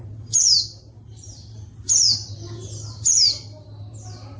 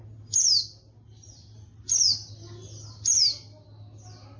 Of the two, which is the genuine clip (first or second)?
second